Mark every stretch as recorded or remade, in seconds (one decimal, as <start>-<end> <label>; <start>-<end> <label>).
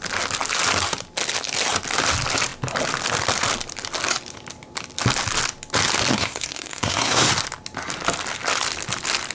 0.0-6.1 recorded; 6.1-7.3 remade; 7.3-9.3 recorded